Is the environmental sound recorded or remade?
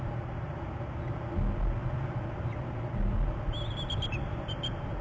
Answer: recorded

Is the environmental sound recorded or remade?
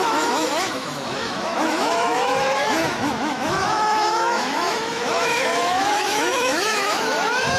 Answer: remade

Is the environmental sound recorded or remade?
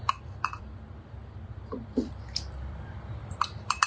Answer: remade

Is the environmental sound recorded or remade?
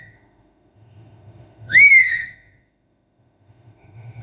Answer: remade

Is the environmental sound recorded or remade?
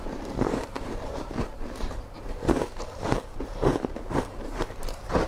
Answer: remade